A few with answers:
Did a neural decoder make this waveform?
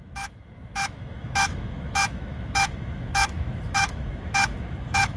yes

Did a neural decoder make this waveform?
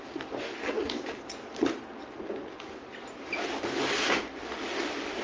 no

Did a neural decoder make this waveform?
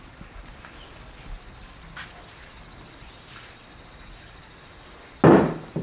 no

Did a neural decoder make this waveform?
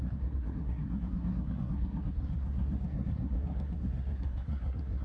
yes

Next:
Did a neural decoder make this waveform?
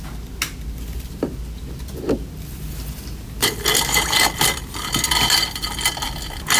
no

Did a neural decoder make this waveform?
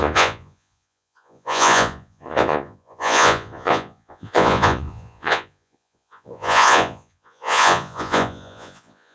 yes